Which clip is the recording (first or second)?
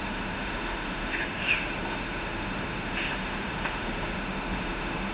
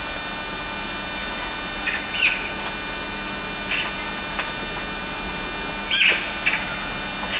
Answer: second